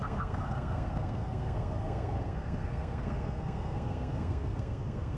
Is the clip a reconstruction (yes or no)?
yes